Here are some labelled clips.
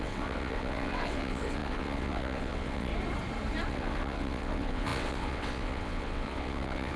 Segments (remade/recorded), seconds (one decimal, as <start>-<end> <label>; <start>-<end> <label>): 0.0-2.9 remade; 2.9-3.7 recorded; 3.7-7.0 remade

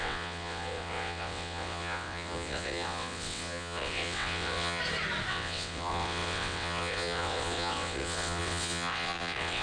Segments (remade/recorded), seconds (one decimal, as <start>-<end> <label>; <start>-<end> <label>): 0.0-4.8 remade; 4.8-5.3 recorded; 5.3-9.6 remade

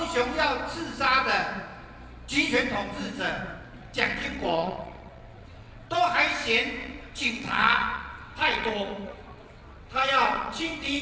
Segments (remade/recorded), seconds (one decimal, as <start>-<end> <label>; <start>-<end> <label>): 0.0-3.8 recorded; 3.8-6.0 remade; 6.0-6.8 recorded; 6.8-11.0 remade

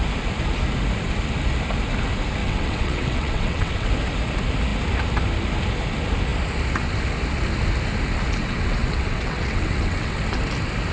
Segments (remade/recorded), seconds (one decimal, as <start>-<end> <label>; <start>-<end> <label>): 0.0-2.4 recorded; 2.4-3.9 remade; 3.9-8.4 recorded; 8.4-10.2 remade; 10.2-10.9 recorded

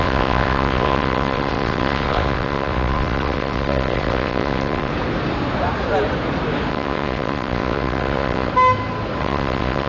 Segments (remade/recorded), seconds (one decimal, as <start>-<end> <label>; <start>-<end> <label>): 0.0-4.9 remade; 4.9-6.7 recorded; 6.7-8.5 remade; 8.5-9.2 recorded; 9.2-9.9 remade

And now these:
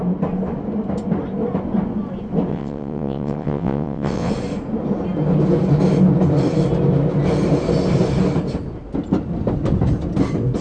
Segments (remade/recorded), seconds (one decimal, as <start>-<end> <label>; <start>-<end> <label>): 0.0-2.5 recorded; 2.5-4.3 remade; 4.3-10.6 recorded

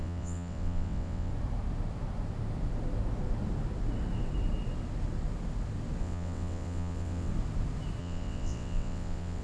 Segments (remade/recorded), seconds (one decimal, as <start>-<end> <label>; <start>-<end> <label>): 0.0-1.3 remade; 1.3-6.0 recorded; 6.0-7.3 remade; 7.3-8.0 recorded; 8.0-9.4 remade

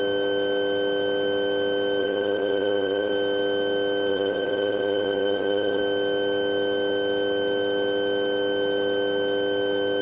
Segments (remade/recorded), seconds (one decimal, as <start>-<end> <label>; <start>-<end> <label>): 0.0-2.0 recorded; 2.0-3.1 remade; 3.1-4.1 recorded; 4.1-5.8 remade; 5.8-10.0 recorded